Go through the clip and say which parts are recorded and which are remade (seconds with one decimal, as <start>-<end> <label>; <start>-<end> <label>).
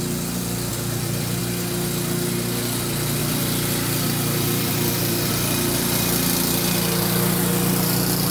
0.0-0.7 recorded; 0.7-1.4 remade; 1.4-3.2 recorded; 3.2-5.3 remade; 5.3-8.3 recorded